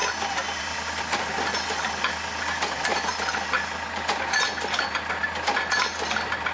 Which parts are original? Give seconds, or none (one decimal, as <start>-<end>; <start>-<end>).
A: 0.0-6.5